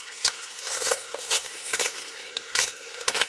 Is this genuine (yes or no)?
no